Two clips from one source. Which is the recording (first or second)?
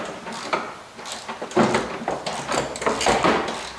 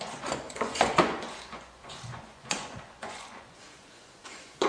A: first